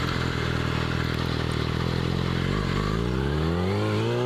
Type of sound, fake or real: real